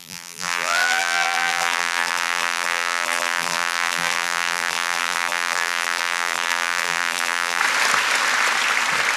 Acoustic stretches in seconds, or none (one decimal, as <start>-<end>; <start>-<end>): 7.6-9.2